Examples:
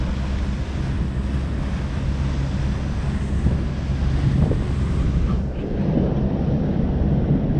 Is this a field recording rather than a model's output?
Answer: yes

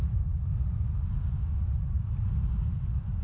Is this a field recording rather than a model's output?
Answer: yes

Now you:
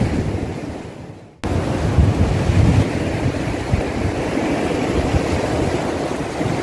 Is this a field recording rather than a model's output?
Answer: yes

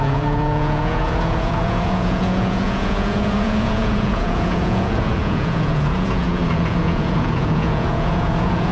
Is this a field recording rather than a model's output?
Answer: no